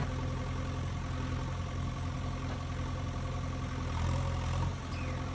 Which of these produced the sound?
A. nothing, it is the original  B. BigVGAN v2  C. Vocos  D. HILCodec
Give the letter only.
A